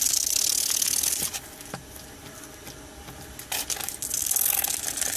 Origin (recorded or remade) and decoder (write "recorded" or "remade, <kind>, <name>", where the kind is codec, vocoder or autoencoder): recorded